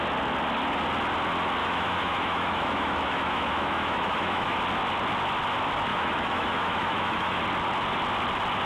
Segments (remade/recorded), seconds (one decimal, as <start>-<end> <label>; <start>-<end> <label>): 0.0-1.6 recorded; 1.6-4.6 remade; 4.6-5.9 recorded; 5.9-7.4 remade; 7.4-8.7 recorded